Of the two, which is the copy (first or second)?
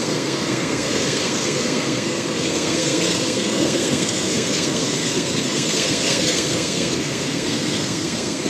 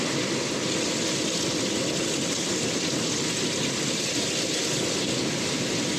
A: first